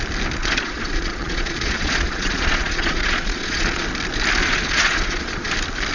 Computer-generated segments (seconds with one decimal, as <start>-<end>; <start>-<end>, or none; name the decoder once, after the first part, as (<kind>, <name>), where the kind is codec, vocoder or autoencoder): 0.4-3.9 (vocoder, Vocos); 4.4-5.5

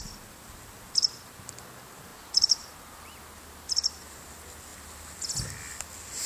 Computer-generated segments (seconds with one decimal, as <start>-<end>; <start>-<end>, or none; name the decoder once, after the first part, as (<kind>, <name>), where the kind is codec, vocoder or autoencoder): none

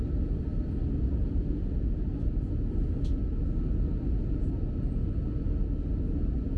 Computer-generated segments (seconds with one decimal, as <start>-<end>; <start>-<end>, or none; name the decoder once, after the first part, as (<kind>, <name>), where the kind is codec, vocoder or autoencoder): none